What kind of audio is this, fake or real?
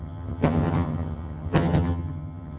fake